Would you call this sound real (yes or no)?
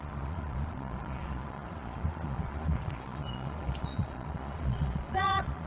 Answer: no